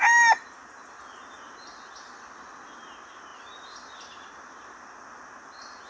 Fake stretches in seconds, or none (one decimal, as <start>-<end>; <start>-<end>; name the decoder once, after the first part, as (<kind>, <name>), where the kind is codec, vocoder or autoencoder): none

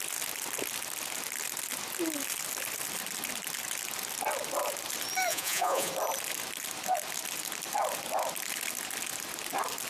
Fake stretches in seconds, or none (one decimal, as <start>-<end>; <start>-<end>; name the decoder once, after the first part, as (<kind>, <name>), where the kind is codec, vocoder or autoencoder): 5.3-5.9 (vocoder, Vocos)

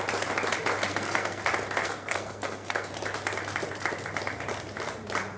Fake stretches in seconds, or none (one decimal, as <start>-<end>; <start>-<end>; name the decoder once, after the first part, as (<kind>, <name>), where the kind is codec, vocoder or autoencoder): 0.9-1.4 (codec, SNAC); 1.8-2.9

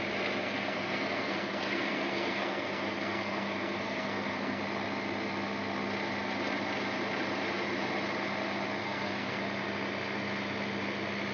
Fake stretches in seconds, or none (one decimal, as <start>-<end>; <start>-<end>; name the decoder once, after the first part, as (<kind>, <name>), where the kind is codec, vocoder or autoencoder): 0.4-4.6 (codec, SNAC); 8.8-9.4

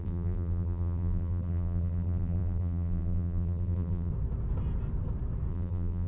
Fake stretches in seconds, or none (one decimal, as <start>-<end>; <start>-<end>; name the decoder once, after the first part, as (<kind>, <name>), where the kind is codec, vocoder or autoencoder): 0.0-4.1 (vocoder, BigVGAN v2); 5.5-6.1

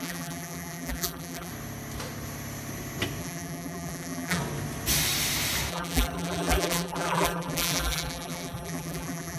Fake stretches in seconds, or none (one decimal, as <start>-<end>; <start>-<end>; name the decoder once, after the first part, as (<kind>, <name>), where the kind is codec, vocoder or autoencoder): 0.0-1.5 (vocoder, BigVGAN v2); 3.2-4.4; 5.7-9.4

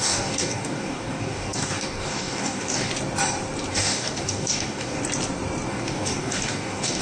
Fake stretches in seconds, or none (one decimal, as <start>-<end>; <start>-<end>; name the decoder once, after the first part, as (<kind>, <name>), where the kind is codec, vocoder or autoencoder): 0.0-2.9 (codec, DAC); 3.7-5.0; 5.7-7.0